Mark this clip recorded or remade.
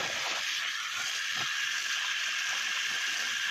remade